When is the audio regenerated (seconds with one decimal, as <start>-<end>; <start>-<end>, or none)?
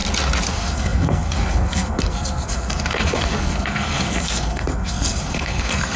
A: 0.5-6.0